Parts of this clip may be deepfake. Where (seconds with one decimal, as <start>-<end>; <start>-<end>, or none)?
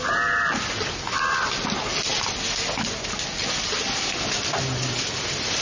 none